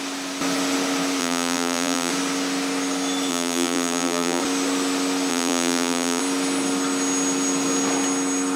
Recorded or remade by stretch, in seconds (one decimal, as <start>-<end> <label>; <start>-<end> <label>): 0.0-1.2 recorded; 1.2-2.1 remade; 2.1-3.3 recorded; 3.3-4.4 remade; 4.4-5.3 recorded; 5.3-6.2 remade; 6.2-8.6 recorded